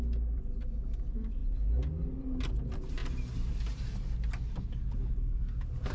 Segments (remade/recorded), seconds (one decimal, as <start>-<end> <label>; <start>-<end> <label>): 0.0-5.9 recorded